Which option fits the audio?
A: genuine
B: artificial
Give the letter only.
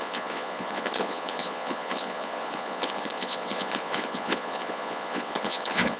B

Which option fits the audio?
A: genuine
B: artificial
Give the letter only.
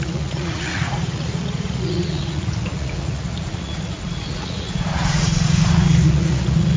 B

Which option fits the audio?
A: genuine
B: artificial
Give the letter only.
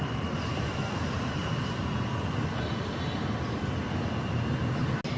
A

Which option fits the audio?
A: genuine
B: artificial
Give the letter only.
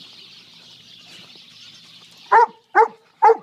A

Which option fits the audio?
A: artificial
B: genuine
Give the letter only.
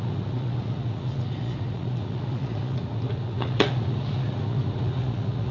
A